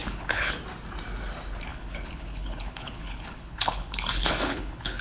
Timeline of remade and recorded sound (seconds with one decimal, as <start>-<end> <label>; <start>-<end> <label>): 0.0-0.6 remade; 0.6-1.7 recorded; 1.7-5.0 remade